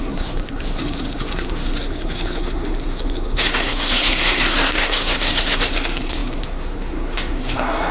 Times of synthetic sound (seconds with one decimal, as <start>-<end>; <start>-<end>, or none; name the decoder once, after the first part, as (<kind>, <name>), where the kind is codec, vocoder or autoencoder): 0.0-7.9 (codec, SNAC)